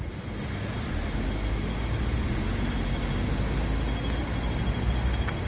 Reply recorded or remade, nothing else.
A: recorded